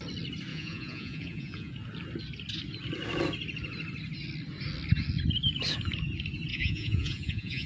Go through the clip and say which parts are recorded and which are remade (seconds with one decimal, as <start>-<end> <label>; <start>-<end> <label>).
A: 0.0-0.5 recorded; 0.5-1.7 remade; 1.7-6.5 recorded; 6.5-7.7 remade